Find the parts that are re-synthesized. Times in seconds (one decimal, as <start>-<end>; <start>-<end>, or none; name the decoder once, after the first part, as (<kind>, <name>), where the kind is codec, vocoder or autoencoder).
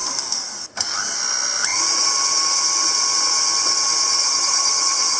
4.2-5.2 (vocoder, HiFi-GAN)